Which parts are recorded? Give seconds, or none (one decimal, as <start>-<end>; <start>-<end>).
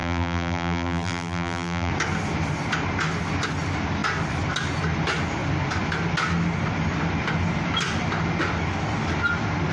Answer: 1.9-9.7